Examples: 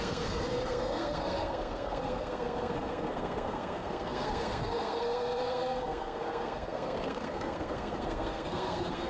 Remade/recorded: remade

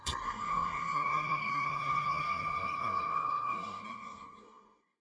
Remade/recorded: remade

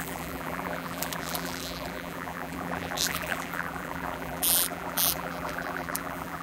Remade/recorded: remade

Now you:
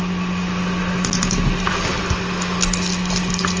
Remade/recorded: recorded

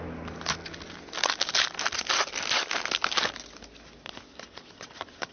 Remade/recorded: recorded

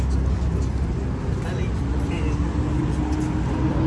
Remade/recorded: recorded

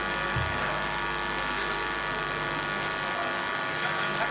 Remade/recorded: recorded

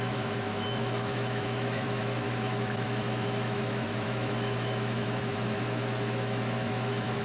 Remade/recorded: remade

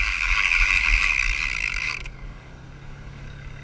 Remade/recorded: remade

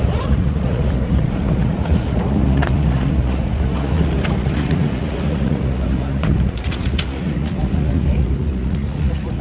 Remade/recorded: remade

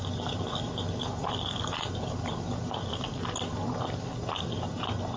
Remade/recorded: remade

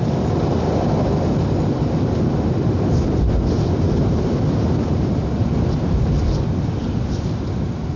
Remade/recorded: recorded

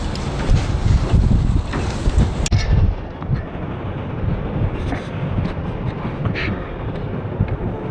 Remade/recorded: recorded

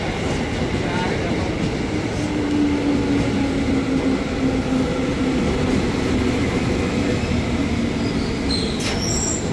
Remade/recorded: recorded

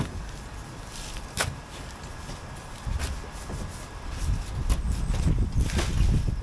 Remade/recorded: recorded